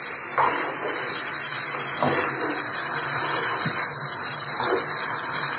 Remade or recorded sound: recorded